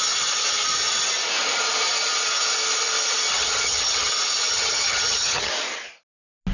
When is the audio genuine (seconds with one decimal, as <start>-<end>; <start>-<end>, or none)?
0.0-3.3; 4.1-4.5; 5.5-6.5